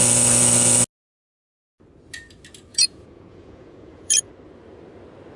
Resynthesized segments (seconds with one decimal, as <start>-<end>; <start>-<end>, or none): 2.7-4.3